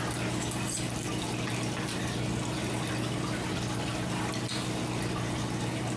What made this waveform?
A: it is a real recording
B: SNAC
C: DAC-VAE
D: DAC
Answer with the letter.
A